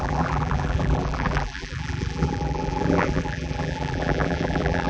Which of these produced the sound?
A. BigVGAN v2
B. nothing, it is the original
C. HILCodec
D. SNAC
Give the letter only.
A